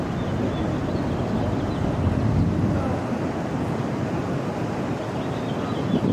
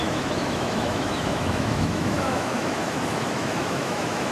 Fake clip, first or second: second